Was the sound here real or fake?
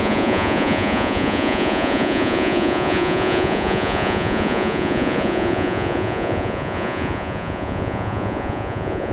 fake